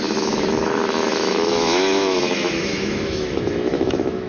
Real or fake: fake